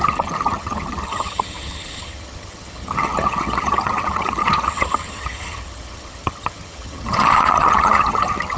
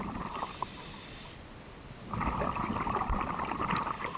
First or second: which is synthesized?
first